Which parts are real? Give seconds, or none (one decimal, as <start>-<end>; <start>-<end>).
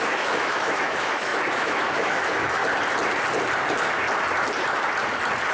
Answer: 2.6-5.5